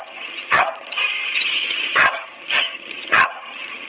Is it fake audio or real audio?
fake